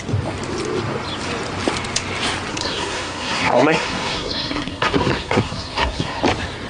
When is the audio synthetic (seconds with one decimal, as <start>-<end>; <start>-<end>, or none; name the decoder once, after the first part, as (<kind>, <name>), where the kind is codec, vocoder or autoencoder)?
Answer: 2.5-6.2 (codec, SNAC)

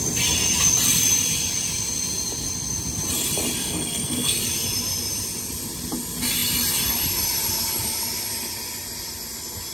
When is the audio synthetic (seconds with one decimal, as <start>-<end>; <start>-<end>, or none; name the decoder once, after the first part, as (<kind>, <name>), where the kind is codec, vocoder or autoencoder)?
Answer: 3.6-4.4 (codec, SNAC)

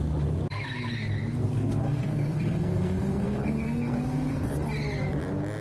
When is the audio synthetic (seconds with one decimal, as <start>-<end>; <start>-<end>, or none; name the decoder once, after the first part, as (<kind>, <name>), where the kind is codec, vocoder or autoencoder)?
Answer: 1.3-4.5 (codec, SNAC)